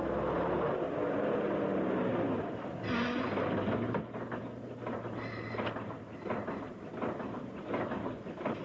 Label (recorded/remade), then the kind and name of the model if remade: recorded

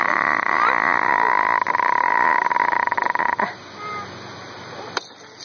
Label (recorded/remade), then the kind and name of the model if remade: recorded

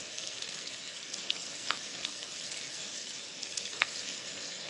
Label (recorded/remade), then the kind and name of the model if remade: remade, codec, SNAC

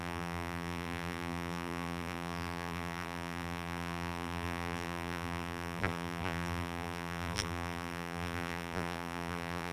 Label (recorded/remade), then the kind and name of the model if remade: remade, vocoder, BigVGAN v2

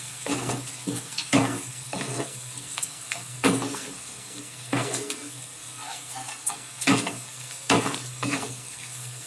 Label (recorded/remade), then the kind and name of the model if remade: remade, codec, SNAC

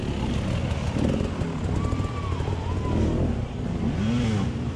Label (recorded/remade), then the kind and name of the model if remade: recorded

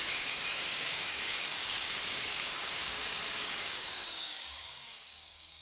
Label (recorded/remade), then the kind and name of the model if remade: remade, codec, DAC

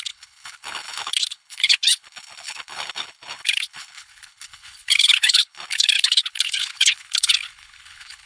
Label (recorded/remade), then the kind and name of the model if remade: remade, codec, HILCodec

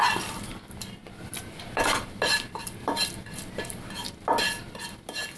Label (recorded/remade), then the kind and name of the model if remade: recorded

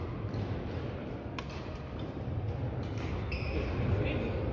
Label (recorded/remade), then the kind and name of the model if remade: recorded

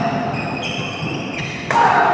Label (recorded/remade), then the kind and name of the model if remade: recorded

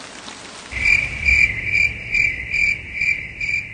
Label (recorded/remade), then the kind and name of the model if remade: recorded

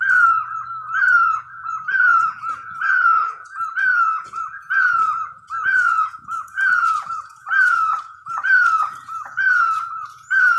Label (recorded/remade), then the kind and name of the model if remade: remade, vocoder, Vocos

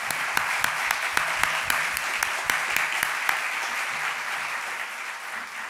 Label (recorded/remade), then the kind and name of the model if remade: recorded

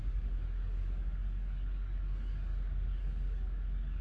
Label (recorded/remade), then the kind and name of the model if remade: remade, codec, DAC